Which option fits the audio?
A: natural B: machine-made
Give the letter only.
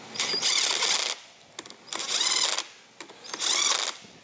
A